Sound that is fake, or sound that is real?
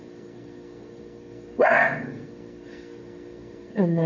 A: fake